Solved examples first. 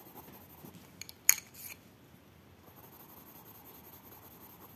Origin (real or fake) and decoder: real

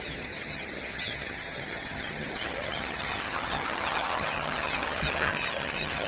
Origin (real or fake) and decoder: fake, vocoder, HiFi-GAN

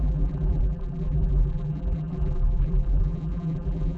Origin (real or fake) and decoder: fake, vocoder, BigVGAN v2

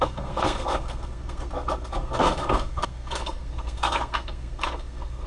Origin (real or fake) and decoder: fake, codec, SNAC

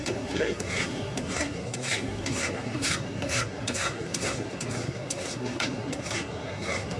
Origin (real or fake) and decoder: fake, codec, SNAC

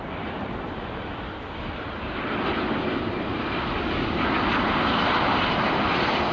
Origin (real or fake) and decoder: real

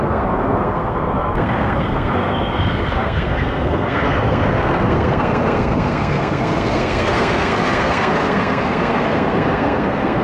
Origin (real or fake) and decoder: fake, codec, SNAC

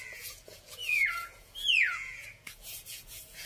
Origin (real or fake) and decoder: fake, vocoder, Vocos